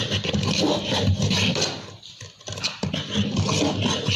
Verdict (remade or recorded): recorded